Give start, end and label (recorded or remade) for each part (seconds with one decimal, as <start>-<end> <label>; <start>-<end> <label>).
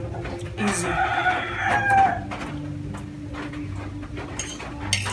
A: 0.0-5.1 recorded